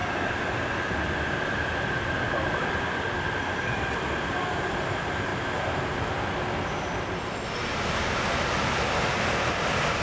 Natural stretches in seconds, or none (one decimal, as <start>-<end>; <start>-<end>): 0.0-1.4; 5.3-9.2